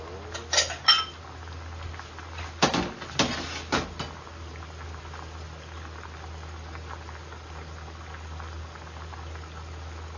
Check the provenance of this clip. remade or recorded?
recorded